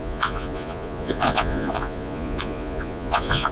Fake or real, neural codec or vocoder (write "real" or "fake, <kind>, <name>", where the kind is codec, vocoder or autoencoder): fake, vocoder, Vocos